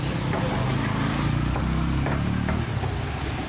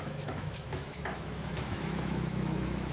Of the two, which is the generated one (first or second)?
second